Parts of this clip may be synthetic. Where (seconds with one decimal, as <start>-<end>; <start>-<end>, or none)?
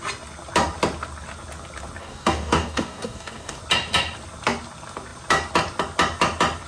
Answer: 2.0-3.6